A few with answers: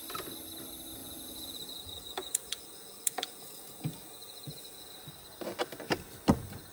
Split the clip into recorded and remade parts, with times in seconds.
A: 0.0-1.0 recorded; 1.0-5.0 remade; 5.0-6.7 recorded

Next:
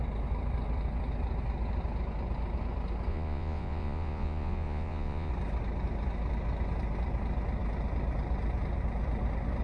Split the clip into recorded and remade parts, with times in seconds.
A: 0.0-3.1 recorded; 3.1-5.3 remade; 5.3-9.6 recorded

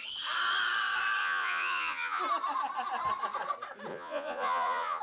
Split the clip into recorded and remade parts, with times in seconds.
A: 0.0-1.2 recorded; 1.2-2.2 remade; 2.2-3.9 recorded; 3.9-5.0 remade

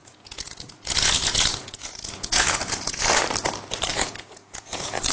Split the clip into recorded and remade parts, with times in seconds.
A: 0.0-3.1 remade; 3.1-3.9 recorded; 3.9-5.1 remade

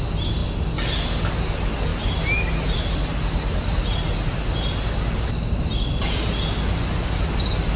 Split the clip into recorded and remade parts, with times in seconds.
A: 0.0-7.8 recorded

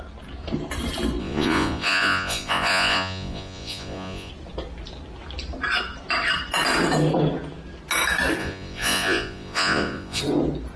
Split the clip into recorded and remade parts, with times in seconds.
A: 0.0-1.2 recorded; 1.2-4.3 remade; 4.3-8.4 recorded; 8.4-10.2 remade; 10.2-10.8 recorded

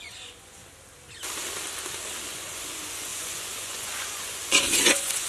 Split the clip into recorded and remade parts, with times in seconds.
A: 0.0-0.6 remade; 0.6-2.2 recorded; 2.2-5.3 remade

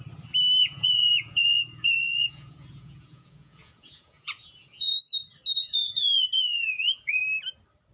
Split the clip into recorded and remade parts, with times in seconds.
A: 0.0-0.6 recorded; 0.6-5.0 remade; 5.0-5.6 recorded; 5.6-7.2 remade; 7.2-7.9 recorded